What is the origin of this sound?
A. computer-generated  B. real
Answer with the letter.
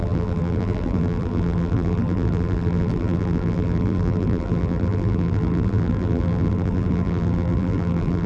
A